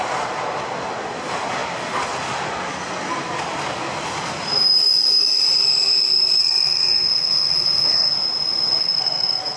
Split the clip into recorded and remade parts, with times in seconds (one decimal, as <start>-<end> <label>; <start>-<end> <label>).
0.0-6.4 recorded; 6.4-8.1 remade; 8.1-8.8 recorded; 8.8-9.6 remade